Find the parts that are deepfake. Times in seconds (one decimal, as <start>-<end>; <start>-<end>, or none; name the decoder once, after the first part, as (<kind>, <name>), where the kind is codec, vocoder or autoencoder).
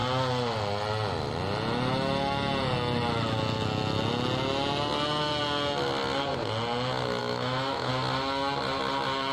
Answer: 7.2-7.9 (autoencoder, DAC-VAE)